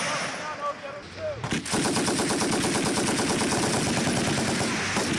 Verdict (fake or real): real